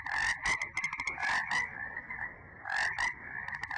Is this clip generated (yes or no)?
no